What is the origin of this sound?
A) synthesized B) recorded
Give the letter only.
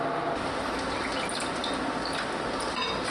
B